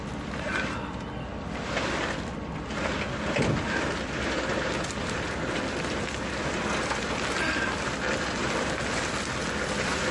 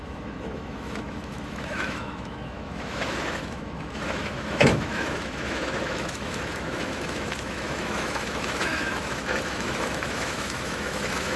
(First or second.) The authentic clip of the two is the first